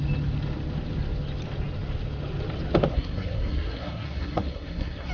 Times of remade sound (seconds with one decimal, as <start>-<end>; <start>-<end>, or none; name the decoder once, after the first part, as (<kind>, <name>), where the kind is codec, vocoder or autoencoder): 2.9-5.1 (codec, SNAC)